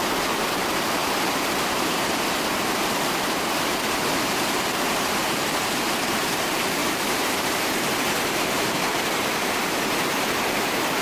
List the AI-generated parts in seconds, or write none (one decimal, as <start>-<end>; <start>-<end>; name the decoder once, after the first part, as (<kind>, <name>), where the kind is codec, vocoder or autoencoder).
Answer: 0.0-11.0 (vocoder, BigVGAN v2)

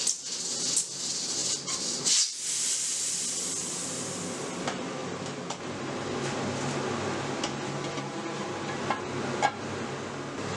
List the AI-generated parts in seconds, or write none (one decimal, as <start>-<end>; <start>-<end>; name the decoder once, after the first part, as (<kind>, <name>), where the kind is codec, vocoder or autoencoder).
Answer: none

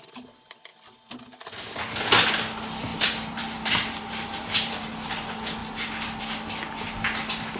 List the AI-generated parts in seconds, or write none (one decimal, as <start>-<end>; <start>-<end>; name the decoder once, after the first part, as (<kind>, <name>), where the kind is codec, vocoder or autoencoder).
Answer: 2.9-4.8 (vocoder, BigVGAN v2); 5.6-6.2

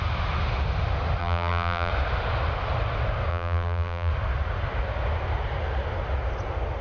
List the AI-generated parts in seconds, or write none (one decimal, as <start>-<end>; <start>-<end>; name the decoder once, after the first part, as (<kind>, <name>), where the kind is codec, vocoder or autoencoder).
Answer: 1.2-1.9 (vocoder, BigVGAN v2); 3.3-4.1

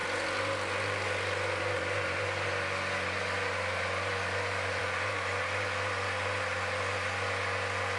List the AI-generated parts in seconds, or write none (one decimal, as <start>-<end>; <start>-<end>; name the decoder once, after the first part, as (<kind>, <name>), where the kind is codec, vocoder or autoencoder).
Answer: none